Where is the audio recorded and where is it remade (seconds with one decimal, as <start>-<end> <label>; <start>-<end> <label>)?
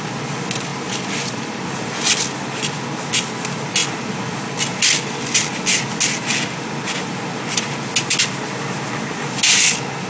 0.0-0.7 recorded; 0.7-1.9 remade; 1.9-10.1 recorded